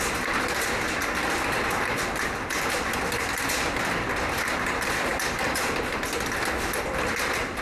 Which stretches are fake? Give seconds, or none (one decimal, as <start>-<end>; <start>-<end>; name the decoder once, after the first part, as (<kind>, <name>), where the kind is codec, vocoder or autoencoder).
none